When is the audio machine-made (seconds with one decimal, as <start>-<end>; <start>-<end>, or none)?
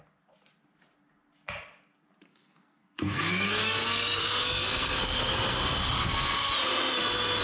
2.3-6.5